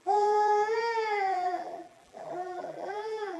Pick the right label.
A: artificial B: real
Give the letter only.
A